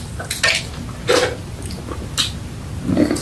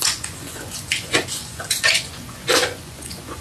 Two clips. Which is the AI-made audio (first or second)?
second